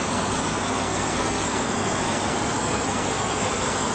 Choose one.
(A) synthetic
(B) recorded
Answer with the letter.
A